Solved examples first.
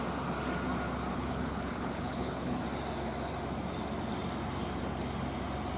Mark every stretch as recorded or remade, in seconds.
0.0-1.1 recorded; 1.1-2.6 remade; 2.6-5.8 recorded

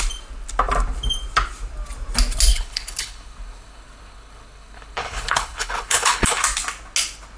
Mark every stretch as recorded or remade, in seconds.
0.0-2.5 recorded; 2.5-6.4 remade; 6.4-7.4 recorded